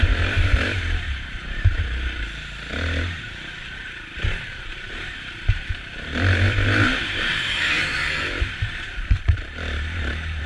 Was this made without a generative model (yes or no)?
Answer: no